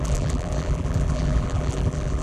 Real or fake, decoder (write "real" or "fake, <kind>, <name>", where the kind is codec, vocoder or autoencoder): fake, vocoder, BigVGAN v2